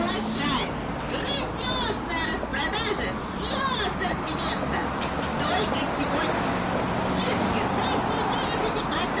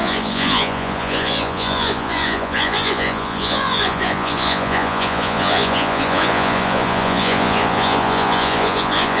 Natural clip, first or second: first